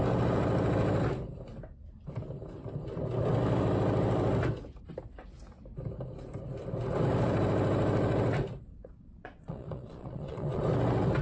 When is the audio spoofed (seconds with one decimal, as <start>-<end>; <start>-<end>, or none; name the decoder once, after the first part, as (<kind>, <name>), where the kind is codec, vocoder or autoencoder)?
8.7-10.6 (vocoder, Vocos)